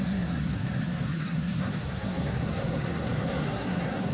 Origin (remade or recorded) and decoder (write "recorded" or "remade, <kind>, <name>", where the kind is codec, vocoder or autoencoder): remade, codec, SNAC